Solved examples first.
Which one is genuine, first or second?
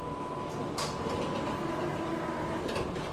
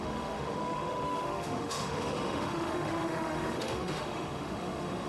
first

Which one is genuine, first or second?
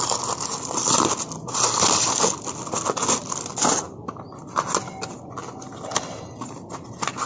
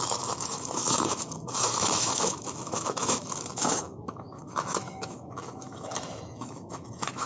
first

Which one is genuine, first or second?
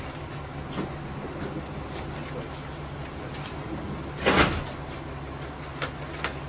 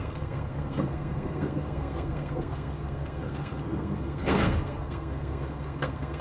first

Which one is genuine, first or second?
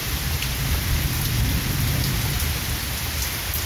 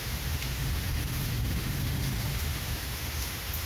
first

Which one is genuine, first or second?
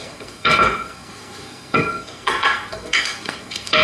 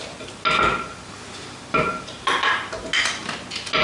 second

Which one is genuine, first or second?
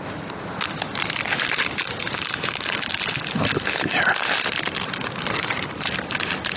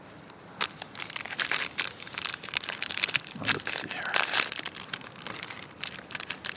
first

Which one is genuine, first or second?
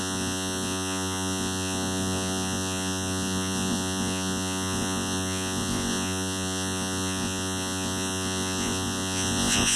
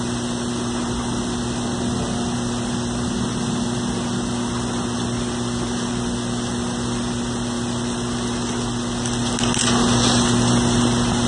second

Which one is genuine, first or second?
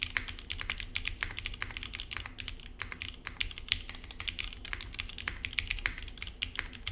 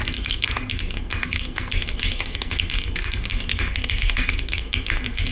first